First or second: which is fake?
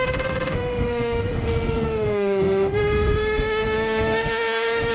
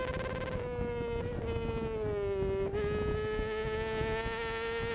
first